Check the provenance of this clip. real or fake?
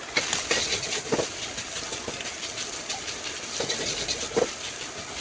real